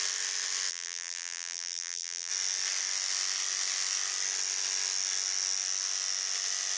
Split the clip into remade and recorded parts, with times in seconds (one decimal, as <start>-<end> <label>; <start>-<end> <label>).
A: 0.0-0.7 recorded; 0.7-2.3 remade; 2.3-6.8 recorded